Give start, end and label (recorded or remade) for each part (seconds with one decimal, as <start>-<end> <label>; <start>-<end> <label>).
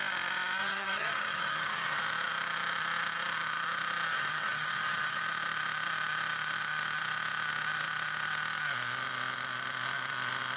0.0-0.6 recorded; 0.6-2.0 remade; 2.0-4.1 recorded; 4.1-5.2 remade; 5.2-10.6 recorded